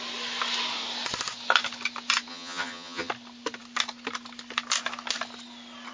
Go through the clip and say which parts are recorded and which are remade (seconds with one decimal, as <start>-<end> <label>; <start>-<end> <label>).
0.0-2.3 recorded; 2.3-3.1 remade; 3.1-5.9 recorded